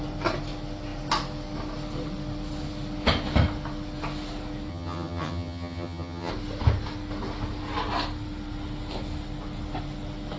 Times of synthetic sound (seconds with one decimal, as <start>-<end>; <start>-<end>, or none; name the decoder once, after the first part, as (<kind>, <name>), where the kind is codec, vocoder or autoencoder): 4.7-6.3 (vocoder, HiFi-GAN)